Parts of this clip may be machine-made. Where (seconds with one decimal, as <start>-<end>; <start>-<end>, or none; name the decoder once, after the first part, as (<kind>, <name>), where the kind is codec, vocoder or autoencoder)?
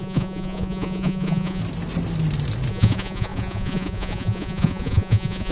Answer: 0.0-1.6 (vocoder, Vocos); 2.7-5.5